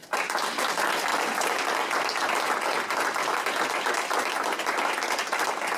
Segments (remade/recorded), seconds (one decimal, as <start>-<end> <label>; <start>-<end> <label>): 0.0-5.8 recorded